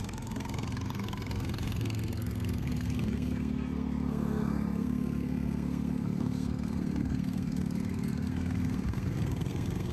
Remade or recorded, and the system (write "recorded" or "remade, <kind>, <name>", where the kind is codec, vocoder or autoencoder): remade, codec, SNAC